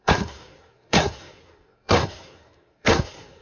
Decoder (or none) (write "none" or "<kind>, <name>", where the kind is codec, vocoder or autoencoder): codec, SNAC